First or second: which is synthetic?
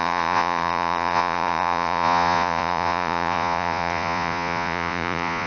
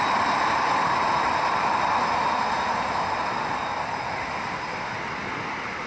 first